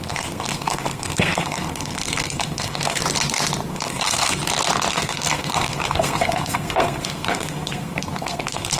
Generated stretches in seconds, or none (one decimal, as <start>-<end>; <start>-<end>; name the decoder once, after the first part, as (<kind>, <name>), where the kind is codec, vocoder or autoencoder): 0.0-3.0 (codec, SNAC); 3.7-4.4; 4.9-8.8

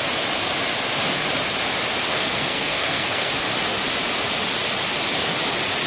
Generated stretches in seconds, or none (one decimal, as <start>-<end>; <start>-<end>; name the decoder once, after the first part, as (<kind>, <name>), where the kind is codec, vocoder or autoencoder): 2.1-3.3 (codec, SNAC)